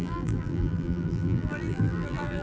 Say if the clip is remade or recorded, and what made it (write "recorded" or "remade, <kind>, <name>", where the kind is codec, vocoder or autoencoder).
remade, vocoder, BigVGAN v2